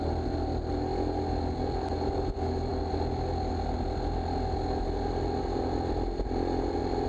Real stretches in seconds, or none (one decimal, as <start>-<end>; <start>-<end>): 0.0-7.1